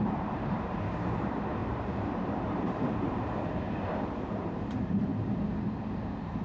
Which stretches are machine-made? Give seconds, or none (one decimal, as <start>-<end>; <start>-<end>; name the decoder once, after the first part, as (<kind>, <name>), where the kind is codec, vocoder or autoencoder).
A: 0.0-5.1 (vocoder, BigVGAN v2)